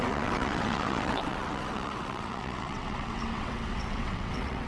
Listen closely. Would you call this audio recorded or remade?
remade